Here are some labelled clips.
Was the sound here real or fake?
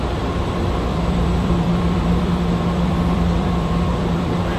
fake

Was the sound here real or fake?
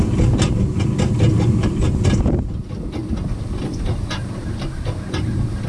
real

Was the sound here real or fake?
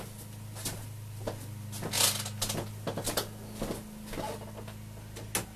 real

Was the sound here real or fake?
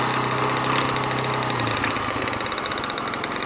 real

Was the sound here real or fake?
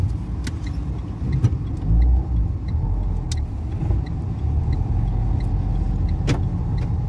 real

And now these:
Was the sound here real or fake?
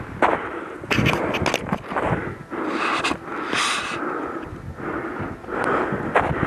real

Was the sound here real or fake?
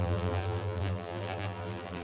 fake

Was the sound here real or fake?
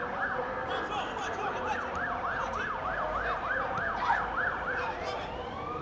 fake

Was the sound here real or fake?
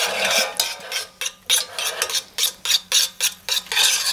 real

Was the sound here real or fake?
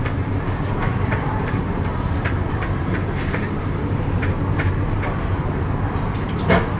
fake